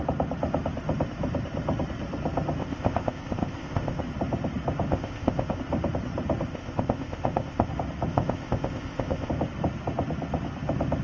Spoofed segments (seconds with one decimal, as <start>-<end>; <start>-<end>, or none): 2.6-4.0; 4.9-5.6; 6.5-7.7; 8.1-9.3